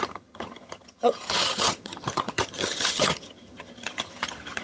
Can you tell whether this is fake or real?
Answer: fake